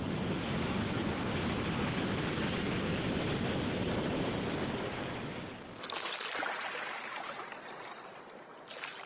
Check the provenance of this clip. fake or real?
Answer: real